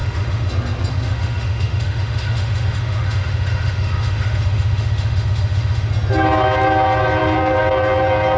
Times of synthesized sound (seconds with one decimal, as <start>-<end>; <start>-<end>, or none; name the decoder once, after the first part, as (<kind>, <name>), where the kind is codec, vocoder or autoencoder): 0.0-0.5 (autoencoder, DAC-VAE); 0.9-5.9